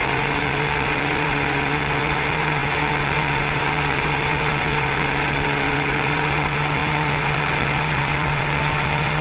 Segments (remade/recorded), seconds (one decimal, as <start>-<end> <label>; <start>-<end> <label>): 0.0-9.2 remade